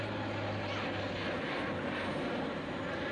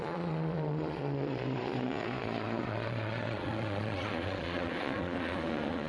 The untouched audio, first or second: first